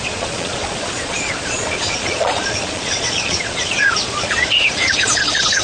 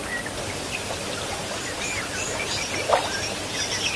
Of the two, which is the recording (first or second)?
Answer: second